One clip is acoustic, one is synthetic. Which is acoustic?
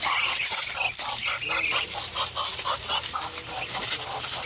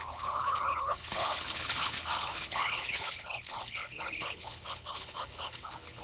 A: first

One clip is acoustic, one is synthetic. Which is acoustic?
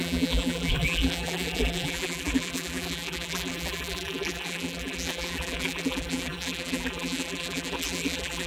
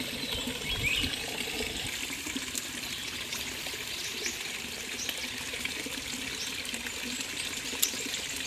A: second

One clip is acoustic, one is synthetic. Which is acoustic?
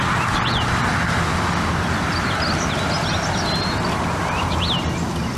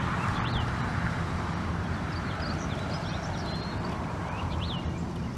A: first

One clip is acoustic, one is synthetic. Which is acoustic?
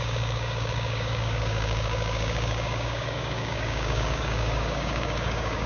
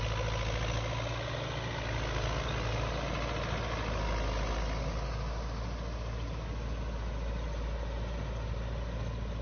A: second